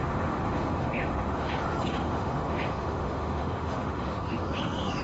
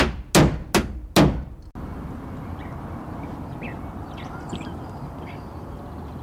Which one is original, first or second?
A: second